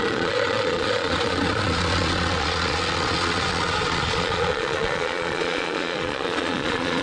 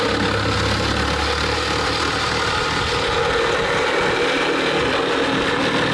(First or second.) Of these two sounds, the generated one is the first